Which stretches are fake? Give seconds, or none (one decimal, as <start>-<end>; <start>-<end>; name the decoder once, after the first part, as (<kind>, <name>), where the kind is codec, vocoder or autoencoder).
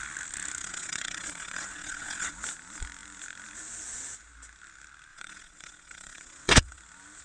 0.6-2.3 (vocoder, WaveNeXt); 5.1-6.8